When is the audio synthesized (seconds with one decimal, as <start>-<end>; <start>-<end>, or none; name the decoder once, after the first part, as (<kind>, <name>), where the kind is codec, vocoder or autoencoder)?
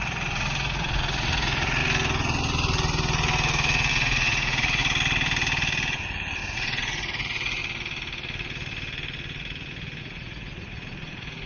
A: 0.0-1.8 (vocoder, Vocos); 3.9-4.8; 6.5-7.6; 10.0-11.5